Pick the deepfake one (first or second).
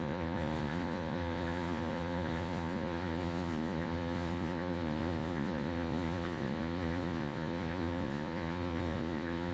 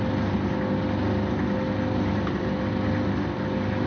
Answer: first